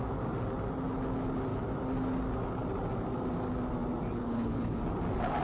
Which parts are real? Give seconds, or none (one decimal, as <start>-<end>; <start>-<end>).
0.0-4.2; 4.8-5.4